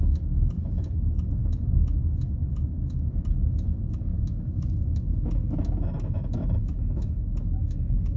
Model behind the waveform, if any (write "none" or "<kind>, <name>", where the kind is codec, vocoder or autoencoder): autoencoder, DAC-VAE